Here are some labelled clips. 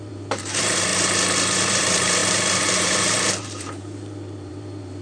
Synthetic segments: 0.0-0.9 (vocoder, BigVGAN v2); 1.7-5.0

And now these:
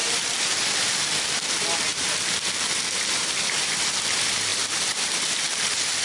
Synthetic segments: 4.5-5.6 (vocoder, BigVGAN v2)

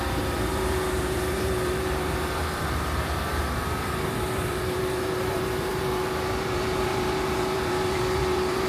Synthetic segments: 0.0-8.7 (vocoder, BigVGAN v2)

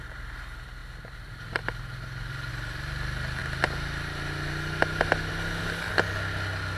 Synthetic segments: none

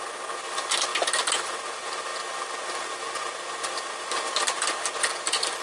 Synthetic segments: none

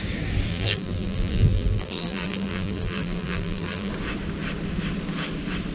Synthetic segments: 0.5-3.9 (vocoder, BigVGAN v2)

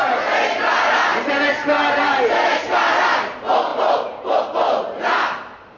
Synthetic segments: 3.7-5.8 (vocoder, BigVGAN v2)

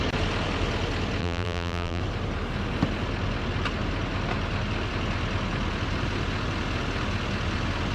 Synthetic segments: 1.2-2.0 (vocoder, BigVGAN v2)